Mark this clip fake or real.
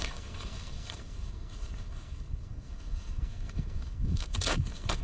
fake